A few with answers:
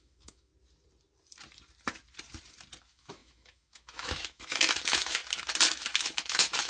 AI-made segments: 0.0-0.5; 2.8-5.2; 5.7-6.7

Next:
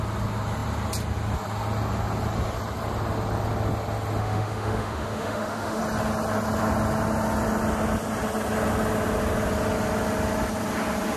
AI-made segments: 4.2-5.8

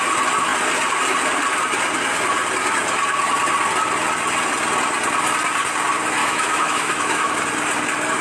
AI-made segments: 6.2-7.3

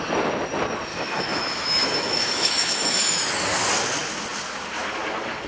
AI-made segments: 0.9-3.3

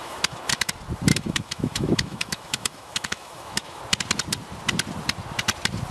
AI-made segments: 0.0-0.7; 1.1-3.8

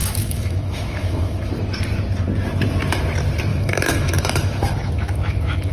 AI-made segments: 0.0-1.5; 3.5-5.7